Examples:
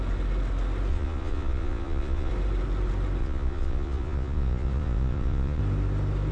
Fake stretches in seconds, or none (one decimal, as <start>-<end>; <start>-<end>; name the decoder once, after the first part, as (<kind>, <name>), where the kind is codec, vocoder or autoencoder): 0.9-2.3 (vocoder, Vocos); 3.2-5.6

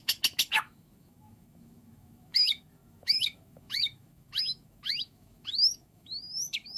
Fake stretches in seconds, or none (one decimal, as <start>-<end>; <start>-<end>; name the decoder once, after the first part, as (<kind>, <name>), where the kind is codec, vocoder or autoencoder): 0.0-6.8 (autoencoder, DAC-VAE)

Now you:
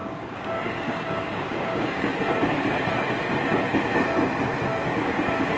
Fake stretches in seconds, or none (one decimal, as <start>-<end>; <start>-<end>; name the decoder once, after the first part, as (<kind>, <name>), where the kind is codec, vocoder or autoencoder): 0.0-2.1 (codec, DAC)